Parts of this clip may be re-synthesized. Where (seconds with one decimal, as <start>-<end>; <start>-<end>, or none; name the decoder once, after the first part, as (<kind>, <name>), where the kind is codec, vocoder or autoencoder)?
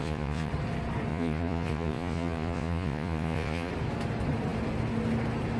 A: 0.0-0.5 (vocoder, Vocos); 1.1-3.7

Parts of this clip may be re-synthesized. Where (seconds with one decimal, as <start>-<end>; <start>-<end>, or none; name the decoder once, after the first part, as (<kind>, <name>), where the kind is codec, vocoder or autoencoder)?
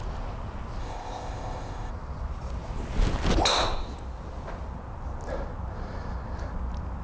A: 0.8-1.9 (codec, ZipCodec)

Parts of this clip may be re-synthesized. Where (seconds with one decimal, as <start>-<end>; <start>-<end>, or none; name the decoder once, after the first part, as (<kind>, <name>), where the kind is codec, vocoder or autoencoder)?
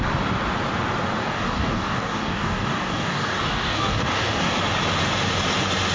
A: 1.2-4.6 (codec, DAC)